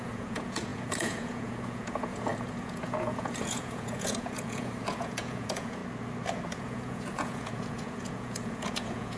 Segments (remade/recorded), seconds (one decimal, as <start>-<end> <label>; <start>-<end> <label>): 0.0-5.8 remade; 5.8-6.5 recorded; 6.5-9.2 remade